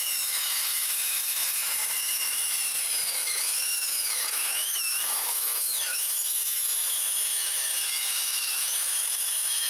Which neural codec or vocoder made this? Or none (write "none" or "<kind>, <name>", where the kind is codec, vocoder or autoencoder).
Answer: autoencoder, DAC-VAE